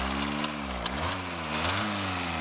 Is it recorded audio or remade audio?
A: recorded